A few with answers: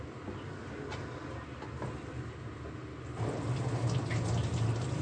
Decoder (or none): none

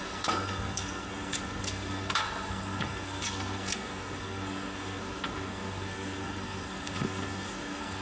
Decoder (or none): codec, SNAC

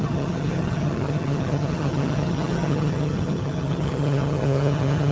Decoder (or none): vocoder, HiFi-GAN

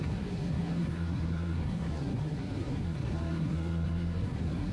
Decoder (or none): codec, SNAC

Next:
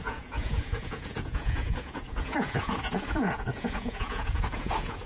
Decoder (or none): vocoder, Vocos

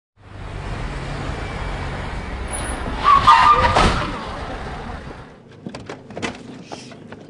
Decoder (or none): none